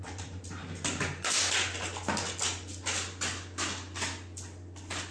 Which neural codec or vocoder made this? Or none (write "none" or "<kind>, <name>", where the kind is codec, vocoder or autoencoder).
none